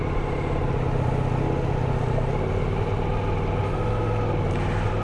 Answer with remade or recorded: recorded